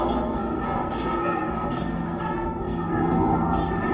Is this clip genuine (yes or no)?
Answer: no